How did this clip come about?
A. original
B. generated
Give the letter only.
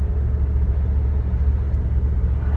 A